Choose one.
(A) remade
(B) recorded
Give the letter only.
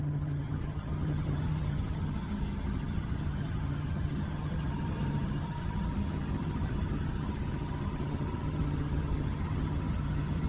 A